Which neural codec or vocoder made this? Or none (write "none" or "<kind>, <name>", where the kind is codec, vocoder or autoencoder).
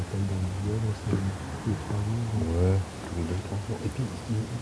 none